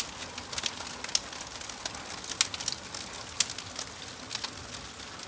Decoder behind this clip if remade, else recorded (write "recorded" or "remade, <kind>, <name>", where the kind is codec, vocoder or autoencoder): recorded